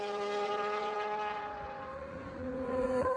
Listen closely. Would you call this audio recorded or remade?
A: remade